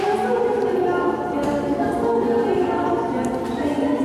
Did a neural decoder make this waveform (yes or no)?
yes